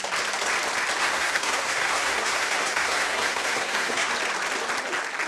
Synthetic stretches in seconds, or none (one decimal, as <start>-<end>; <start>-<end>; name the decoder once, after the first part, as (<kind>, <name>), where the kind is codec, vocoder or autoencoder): 1.0-4.1 (codec, SNAC)